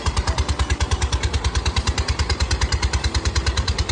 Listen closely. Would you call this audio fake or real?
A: real